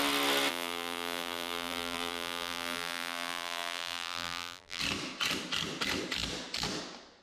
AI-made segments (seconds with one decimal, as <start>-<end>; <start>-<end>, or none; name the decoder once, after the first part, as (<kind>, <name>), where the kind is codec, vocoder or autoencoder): 0.5-4.8 (vocoder, BigVGAN v2)